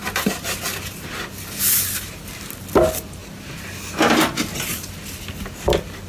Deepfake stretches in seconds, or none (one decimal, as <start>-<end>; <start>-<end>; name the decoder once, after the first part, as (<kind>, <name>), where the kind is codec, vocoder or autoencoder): none